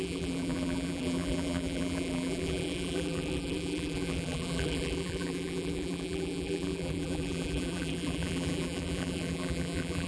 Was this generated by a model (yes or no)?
yes